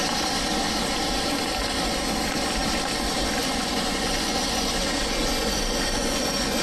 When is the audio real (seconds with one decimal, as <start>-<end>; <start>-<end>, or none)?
0.0-3.4